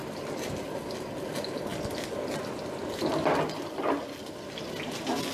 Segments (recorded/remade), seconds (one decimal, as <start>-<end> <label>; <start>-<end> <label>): 0.0-0.6 remade; 0.6-5.3 recorded